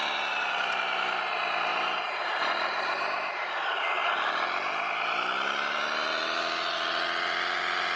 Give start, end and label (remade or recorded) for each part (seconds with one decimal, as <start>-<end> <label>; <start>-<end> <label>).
0.0-1.7 recorded; 1.7-3.6 remade; 3.6-8.0 recorded